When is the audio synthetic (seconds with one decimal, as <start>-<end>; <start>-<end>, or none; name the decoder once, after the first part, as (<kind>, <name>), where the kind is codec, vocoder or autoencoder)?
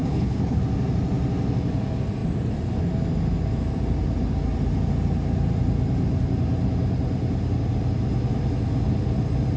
0.0-0.6 (codec, HILCodec)